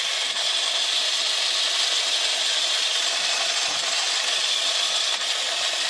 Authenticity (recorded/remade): recorded